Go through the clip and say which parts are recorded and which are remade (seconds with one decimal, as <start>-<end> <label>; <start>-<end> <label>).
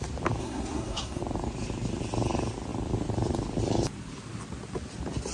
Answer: 0.0-0.4 recorded; 0.4-1.2 remade; 1.2-5.3 recorded